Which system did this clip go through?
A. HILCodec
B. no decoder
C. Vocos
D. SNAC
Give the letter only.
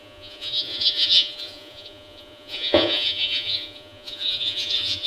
C